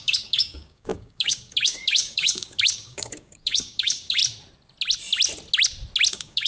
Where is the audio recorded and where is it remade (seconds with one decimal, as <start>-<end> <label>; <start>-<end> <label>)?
0.0-4.2 remade; 4.2-6.1 recorded; 6.1-6.5 remade